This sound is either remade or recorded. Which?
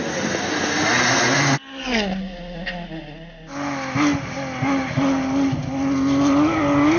recorded